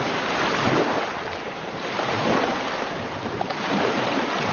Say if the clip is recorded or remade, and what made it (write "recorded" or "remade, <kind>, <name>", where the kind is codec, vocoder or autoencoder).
recorded